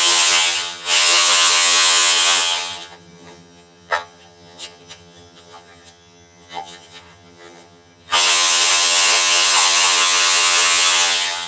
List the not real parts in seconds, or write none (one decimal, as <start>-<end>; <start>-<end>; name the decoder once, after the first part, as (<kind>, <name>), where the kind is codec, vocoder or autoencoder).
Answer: 0.0-11.5 (vocoder, HiFi-GAN)